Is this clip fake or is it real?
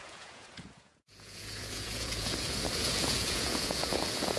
fake